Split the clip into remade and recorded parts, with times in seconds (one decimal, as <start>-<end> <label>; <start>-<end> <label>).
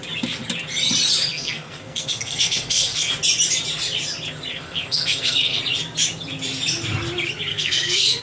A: 0.0-1.3 recorded; 1.3-3.1 remade; 3.1-4.5 recorded; 4.5-5.6 remade; 5.6-7.5 recorded; 7.5-8.2 remade